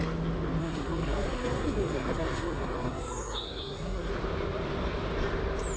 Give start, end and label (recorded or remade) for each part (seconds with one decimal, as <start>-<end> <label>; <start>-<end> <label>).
0.0-0.6 recorded; 0.6-4.1 remade; 4.1-5.8 recorded